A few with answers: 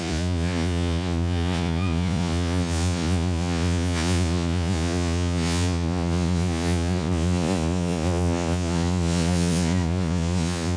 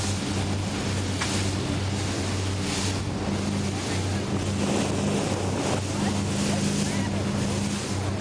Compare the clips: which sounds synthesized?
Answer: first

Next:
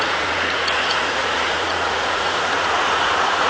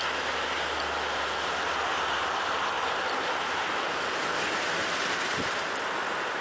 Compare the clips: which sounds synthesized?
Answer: first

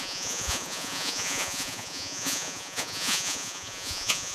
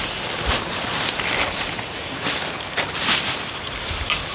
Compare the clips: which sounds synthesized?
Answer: first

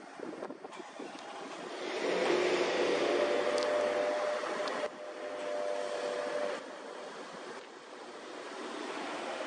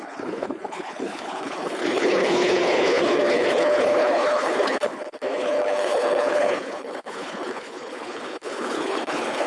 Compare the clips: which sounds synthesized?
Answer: second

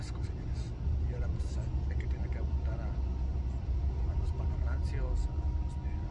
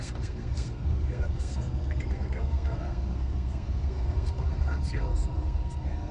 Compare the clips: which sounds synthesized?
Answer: second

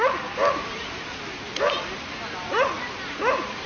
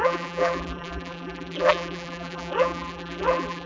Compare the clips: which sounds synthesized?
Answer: second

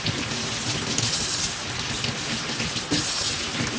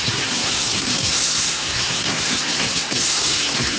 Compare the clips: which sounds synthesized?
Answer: second